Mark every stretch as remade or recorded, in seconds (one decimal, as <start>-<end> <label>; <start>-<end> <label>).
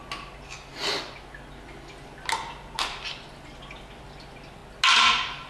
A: 0.0-5.5 recorded